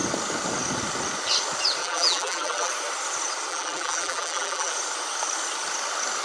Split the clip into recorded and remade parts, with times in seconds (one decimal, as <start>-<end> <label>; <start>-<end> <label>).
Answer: 0.0-1.8 recorded; 1.8-2.7 remade; 2.7-3.5 recorded; 3.5-4.7 remade; 4.7-6.2 recorded

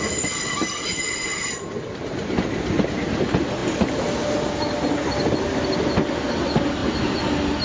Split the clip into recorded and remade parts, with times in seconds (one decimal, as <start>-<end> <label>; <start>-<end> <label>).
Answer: 0.0-7.6 recorded

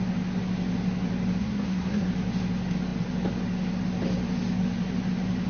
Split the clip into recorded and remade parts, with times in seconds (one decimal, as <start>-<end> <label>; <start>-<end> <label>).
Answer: 0.0-1.4 recorded; 1.4-2.1 remade; 2.1-5.5 recorded

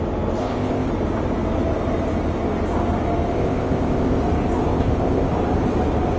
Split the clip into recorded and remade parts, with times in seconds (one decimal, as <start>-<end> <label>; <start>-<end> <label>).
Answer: 0.0-0.4 recorded; 0.4-0.9 remade; 0.9-3.3 recorded; 3.3-4.2 remade; 4.2-4.7 recorded; 4.7-5.3 remade; 5.3-6.2 recorded